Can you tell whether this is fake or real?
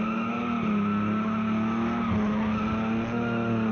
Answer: real